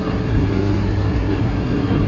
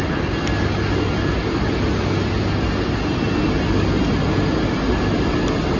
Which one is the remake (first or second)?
first